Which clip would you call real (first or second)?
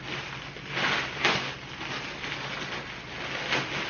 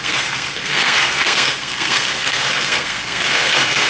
first